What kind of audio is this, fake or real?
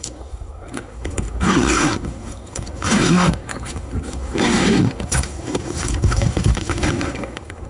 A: fake